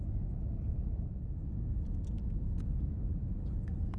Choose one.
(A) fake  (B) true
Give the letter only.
B